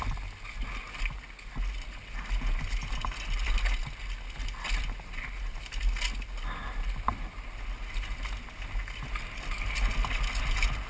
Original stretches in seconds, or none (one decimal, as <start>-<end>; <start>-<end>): 0.0-10.9